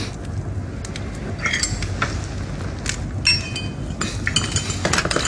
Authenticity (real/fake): real